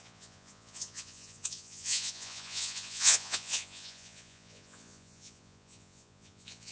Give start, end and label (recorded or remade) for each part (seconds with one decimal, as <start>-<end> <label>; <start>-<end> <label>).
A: 0.0-6.7 remade